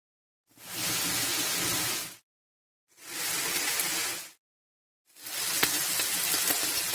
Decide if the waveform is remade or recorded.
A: recorded